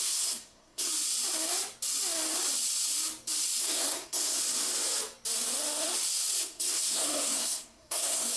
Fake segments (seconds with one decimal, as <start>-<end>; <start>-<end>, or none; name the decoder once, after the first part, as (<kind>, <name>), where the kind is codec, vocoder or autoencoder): 0.0-0.9 (codec, SNAC); 3.6-4.4; 6.4-8.4